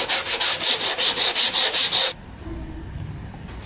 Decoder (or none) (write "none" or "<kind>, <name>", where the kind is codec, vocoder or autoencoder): none